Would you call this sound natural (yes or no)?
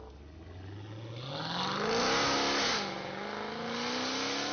yes